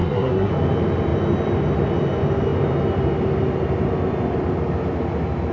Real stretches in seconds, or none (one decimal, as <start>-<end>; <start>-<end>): 0.5-5.5